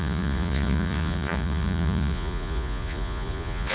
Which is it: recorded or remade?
remade